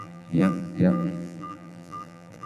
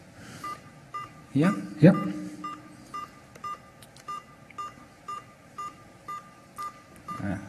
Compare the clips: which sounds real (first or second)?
second